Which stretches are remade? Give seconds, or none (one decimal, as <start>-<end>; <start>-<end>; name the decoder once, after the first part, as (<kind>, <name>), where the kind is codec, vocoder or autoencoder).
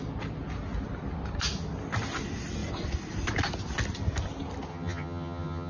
4.7-5.7 (vocoder, HiFi-GAN)